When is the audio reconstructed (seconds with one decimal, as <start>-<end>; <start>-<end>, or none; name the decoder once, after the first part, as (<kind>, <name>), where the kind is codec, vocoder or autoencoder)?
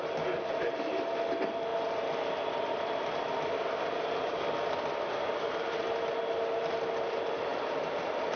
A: none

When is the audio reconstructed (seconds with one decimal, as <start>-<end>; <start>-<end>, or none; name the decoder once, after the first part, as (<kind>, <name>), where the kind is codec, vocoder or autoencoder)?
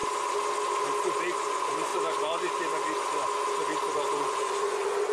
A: 1.2-1.9 (vocoder, Vocos); 4.1-5.1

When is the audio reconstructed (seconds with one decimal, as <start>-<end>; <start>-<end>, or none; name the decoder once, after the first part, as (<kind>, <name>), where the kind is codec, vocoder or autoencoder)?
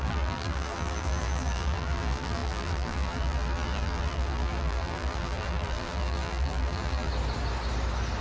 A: 0.0-7.1 (vocoder, BigVGAN v2)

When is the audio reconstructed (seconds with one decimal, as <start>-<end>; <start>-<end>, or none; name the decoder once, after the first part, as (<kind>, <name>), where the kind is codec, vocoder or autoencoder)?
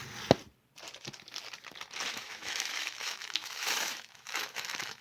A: 2.1-5.0 (autoencoder, DAC-VAE)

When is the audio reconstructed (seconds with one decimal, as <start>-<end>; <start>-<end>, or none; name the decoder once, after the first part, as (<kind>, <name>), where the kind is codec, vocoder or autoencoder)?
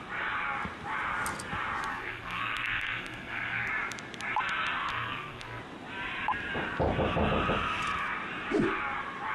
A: 1.9-3.7 (codec, SNAC); 4.9-5.6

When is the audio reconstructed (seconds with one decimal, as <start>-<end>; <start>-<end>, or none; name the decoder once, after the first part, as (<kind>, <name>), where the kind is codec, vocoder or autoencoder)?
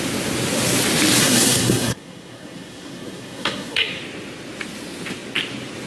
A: 1.2-4.0 (codec, SNAC)